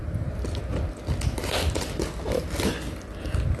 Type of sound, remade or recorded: recorded